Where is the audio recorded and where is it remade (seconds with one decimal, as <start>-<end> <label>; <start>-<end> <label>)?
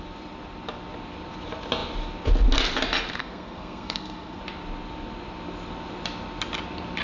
0.0-3.2 recorded; 3.2-4.4 remade; 4.4-7.0 recorded